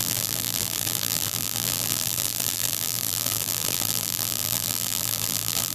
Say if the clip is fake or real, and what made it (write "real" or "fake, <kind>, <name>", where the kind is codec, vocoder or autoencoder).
fake, vocoder, BigVGAN v2